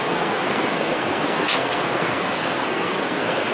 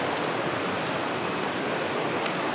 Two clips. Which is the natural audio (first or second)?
second